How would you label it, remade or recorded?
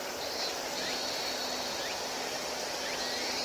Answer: remade